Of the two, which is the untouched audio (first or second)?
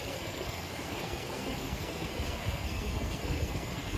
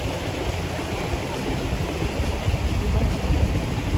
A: second